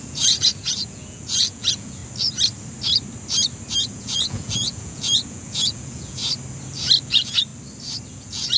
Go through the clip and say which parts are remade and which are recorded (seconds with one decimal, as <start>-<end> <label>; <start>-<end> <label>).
0.0-2.0 remade; 2.0-3.8 recorded; 3.8-6.2 remade; 6.2-7.0 recorded; 7.0-7.5 remade; 7.5-8.1 recorded; 8.1-8.6 remade